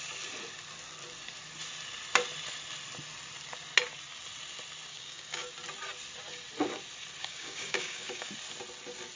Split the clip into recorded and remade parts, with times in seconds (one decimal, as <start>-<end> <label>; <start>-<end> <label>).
0.0-4.9 recorded; 4.9-5.5 remade; 5.5-7.2 recorded; 7.2-8.3 remade; 8.3-9.2 recorded